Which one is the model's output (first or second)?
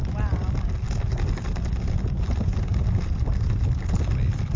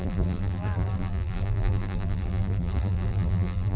second